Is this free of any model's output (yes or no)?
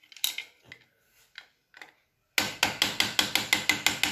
yes